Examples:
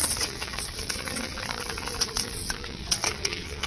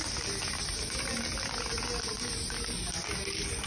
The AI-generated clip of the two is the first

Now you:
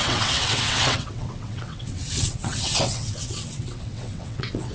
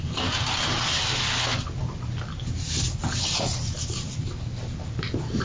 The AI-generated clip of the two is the first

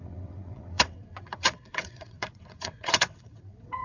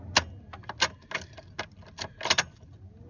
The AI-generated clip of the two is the first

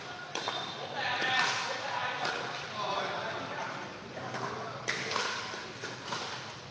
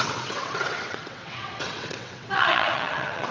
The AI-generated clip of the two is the second